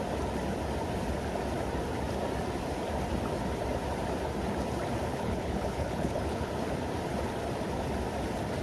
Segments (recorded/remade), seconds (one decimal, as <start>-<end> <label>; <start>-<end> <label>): 0.0-5.1 recorded; 5.1-6.5 remade; 6.5-8.6 recorded